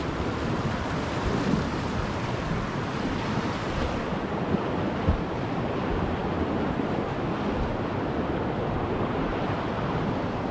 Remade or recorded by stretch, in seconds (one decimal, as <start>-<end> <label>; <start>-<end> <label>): 0.0-10.5 recorded